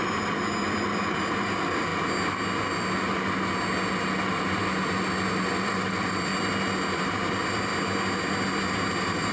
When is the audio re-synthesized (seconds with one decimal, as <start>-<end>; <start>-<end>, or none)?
0.0-1.9; 5.6-6.3; 7.3-7.7; 8.9-9.3